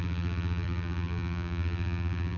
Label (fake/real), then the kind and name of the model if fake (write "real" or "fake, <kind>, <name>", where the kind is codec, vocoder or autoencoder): fake, vocoder, BigVGAN v2